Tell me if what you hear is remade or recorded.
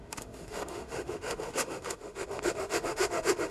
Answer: remade